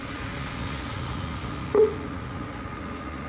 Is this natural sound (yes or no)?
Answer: no